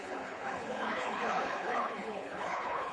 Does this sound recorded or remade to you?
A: remade